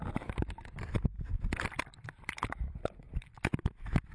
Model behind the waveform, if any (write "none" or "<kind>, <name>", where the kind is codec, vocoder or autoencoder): none